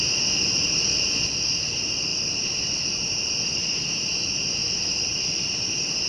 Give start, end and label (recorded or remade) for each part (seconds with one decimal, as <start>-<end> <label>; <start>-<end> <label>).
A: 0.0-2.1 recorded; 2.1-2.9 remade; 2.9-4.6 recorded; 4.6-5.2 remade; 5.2-6.1 recorded